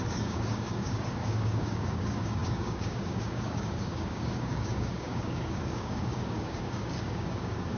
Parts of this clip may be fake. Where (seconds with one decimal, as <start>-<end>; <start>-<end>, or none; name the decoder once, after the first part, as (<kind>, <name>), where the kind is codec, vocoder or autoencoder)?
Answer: 0.0-7.8 (codec, DAC)